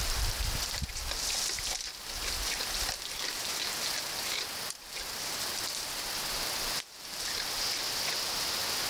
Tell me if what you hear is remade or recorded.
recorded